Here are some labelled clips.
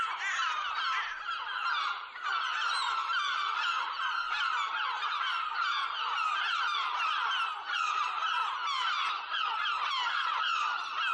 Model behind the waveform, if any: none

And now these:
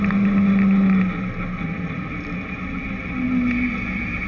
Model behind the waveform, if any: none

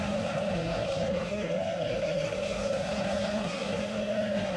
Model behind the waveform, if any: codec, SNAC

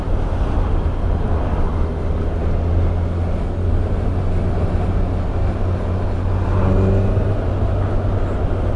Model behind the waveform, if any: none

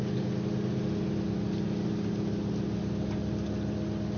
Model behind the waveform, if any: none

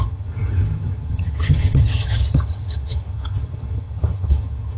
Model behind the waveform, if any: vocoder, HiFi-GAN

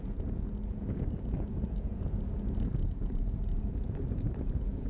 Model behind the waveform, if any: vocoder, Vocos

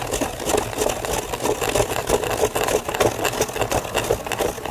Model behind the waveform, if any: none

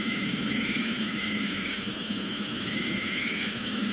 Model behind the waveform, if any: autoencoder, DAC-VAE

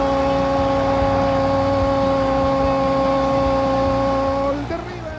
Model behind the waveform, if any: none